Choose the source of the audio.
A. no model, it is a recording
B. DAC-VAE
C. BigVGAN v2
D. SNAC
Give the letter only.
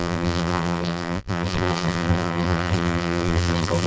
C